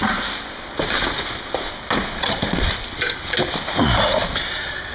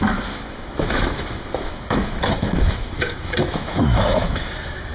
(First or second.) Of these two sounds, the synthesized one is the second